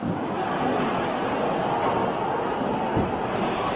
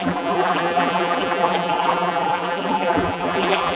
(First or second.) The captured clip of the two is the first